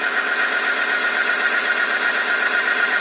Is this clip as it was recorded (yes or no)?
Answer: yes